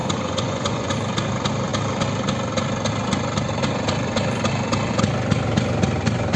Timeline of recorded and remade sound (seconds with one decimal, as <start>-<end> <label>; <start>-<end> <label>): 0.0-0.9 remade; 0.9-6.4 recorded